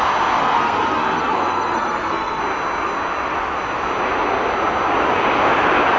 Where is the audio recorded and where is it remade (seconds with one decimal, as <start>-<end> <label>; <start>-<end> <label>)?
0.0-0.4 recorded; 0.4-2.4 remade; 2.4-6.0 recorded